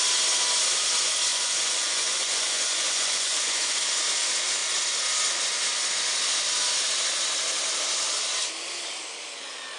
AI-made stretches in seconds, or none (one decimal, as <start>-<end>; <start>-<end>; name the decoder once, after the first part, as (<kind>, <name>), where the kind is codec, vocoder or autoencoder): 1.3-3.9 (vocoder, Vocos)